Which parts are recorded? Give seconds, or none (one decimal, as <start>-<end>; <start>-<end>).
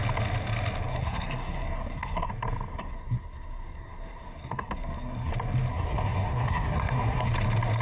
0.0-0.9; 2.3-2.7; 5.3-5.7; 7.3-7.8